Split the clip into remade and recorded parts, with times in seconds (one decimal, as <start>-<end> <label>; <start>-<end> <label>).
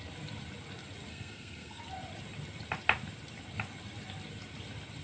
0.0-1.1 recorded; 1.1-1.8 remade; 1.8-5.0 recorded